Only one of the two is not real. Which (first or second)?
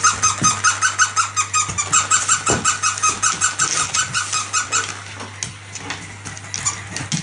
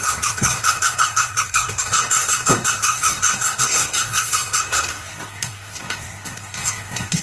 second